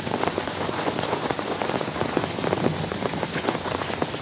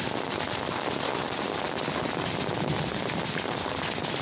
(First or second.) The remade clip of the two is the first